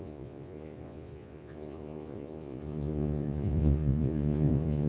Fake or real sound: fake